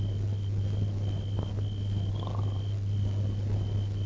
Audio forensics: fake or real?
real